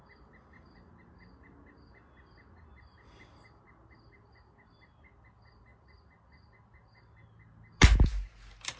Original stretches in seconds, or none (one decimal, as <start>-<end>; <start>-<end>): 0.0-8.8